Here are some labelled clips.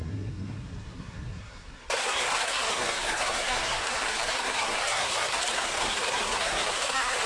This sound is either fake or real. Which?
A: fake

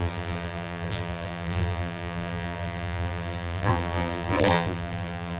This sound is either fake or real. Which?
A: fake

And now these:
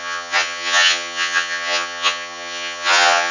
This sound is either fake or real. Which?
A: fake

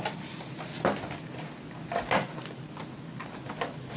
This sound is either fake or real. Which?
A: real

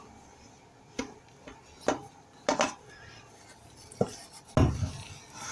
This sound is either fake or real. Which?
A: real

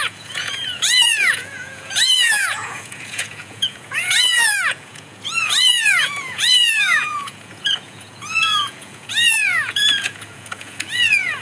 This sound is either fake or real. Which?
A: fake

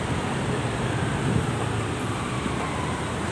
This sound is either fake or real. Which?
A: real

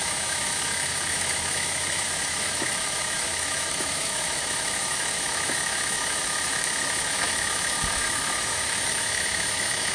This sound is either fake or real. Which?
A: fake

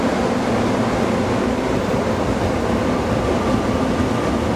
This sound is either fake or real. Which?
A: real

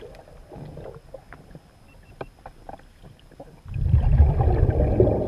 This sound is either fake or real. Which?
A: real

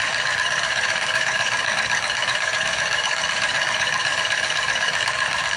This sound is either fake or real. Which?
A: fake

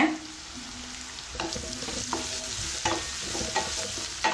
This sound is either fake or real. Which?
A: real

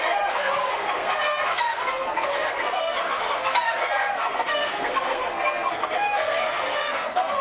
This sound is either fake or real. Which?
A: fake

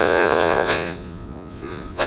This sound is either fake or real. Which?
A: fake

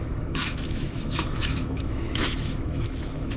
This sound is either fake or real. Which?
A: fake